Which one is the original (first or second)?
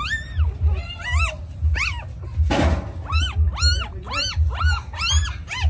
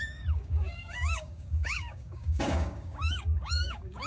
first